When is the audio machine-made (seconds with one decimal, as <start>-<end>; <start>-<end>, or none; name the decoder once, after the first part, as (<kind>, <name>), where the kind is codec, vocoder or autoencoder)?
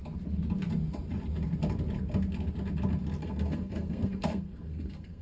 3.2-5.2 (codec, SNAC)